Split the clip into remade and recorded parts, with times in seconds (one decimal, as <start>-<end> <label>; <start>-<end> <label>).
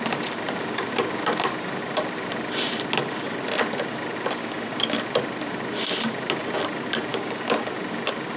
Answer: 0.0-4.4 recorded; 4.4-5.0 remade; 5.0-7.1 recorded; 7.1-7.7 remade; 7.7-8.4 recorded